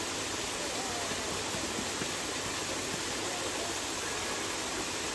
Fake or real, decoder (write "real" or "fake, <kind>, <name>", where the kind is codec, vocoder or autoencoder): real